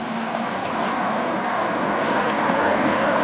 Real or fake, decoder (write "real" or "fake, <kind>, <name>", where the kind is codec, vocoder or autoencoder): fake, codec, DAC